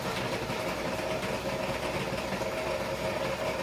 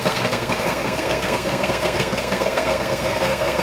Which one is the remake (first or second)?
second